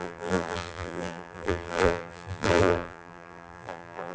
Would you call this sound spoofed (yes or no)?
yes